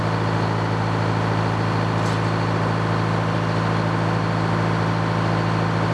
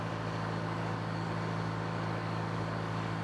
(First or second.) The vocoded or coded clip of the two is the second